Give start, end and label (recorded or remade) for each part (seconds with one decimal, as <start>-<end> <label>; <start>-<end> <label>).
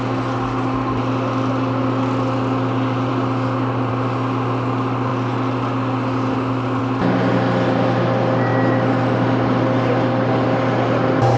0.0-11.4 recorded